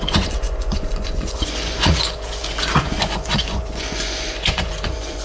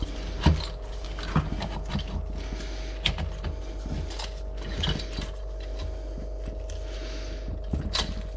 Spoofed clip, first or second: first